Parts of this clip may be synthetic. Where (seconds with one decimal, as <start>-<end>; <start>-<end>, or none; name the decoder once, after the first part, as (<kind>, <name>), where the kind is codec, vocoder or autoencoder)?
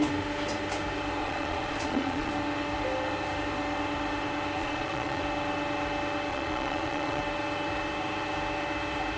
1.2-2.3 (vocoder, Vocos); 4.6-5.2; 6.3-7.2